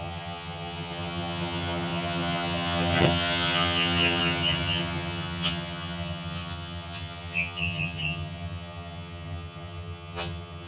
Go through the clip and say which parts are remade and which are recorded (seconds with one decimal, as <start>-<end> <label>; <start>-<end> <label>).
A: 0.0-10.7 remade